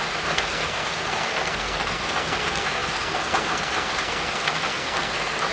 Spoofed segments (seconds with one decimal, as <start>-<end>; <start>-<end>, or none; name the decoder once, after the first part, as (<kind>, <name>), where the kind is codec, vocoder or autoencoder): 0.0-5.5 (codec, SNAC)